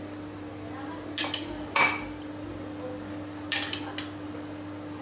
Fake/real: real